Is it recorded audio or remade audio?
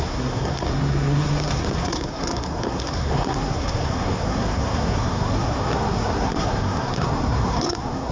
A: remade